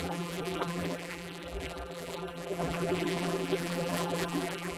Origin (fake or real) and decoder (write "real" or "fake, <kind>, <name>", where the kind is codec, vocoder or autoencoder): fake, vocoder, BigVGAN v2